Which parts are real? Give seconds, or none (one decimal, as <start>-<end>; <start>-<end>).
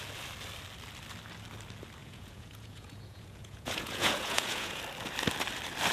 0.0-2.0; 4.8-5.9